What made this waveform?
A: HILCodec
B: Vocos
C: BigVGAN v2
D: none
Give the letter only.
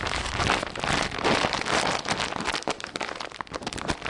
D